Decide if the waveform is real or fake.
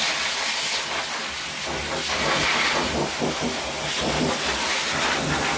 real